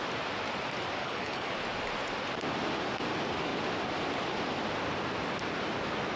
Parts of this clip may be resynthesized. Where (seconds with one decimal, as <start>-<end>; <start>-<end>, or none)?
1.0-1.5